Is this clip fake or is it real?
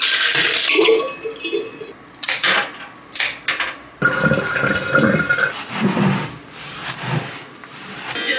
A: real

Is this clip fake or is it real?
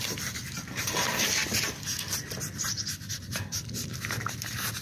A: real